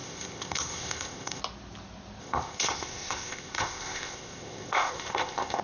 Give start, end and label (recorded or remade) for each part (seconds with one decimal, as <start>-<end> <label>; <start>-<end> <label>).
0.0-1.4 remade; 1.4-2.2 recorded; 2.2-5.6 remade